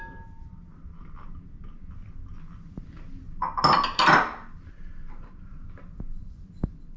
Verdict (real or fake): real